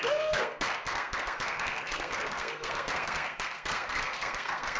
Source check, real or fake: fake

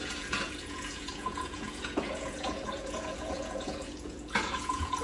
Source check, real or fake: fake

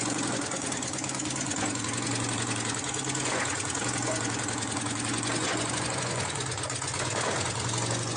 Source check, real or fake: fake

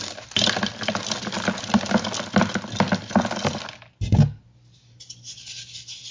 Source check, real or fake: real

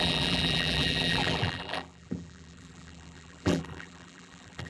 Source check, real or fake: fake